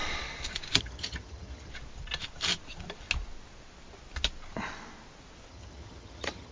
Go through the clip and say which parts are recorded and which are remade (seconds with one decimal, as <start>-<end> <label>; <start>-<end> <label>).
0.0-0.8 recorded; 0.8-1.7 remade; 1.7-5.5 recorded; 5.5-6.5 remade